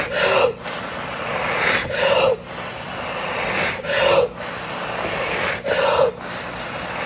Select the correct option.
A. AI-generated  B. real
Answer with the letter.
B